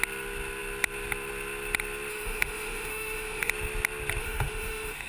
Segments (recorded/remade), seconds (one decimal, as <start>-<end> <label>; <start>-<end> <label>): 0.0-2.1 recorded; 2.1-3.5 remade; 3.5-4.2 recorded; 4.2-5.1 remade